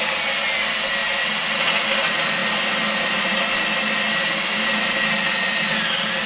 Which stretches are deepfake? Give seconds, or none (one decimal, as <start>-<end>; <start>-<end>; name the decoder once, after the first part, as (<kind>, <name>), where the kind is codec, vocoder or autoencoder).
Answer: none